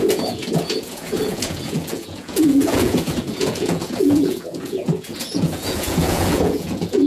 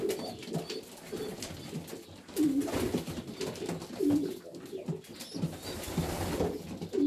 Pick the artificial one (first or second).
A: first